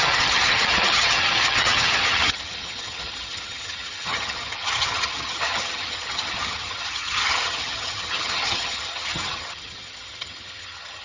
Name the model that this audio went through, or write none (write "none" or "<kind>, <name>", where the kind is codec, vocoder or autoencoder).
vocoder, HiFi-GAN